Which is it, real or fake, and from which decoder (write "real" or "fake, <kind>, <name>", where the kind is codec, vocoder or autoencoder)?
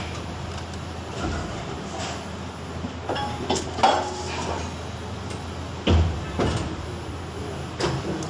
real